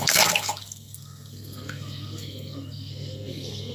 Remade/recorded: remade